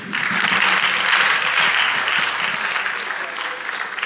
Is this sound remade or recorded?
remade